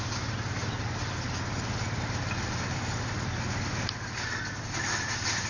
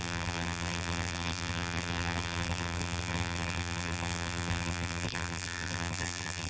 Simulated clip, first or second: second